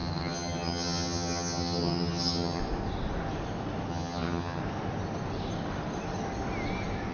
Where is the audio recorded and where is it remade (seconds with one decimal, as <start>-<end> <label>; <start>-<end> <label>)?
0.0-2.6 remade; 2.6-3.9 recorded; 3.9-4.6 remade; 4.6-7.1 recorded